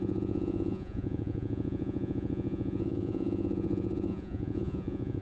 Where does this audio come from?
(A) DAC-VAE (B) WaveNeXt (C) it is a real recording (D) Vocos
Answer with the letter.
D